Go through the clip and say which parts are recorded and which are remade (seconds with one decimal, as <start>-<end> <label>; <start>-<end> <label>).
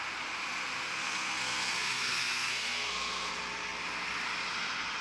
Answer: 0.0-0.9 recorded; 0.9-3.3 remade; 3.3-5.0 recorded